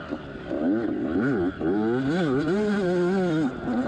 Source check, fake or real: real